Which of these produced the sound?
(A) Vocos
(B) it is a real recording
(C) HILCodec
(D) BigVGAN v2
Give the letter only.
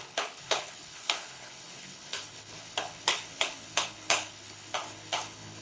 C